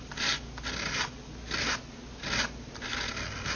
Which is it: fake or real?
real